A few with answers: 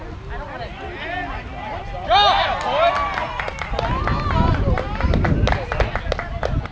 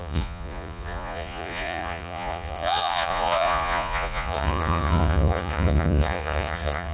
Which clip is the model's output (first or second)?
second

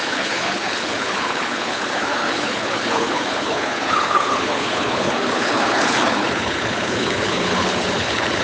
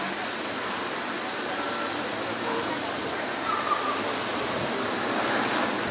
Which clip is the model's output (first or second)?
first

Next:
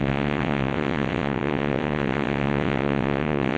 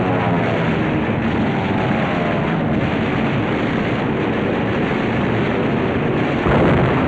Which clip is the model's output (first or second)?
first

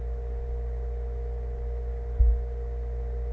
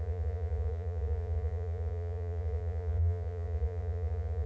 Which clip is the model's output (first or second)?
second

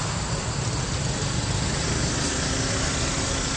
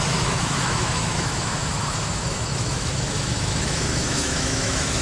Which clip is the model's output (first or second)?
second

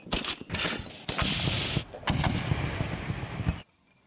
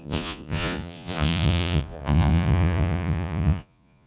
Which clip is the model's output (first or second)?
second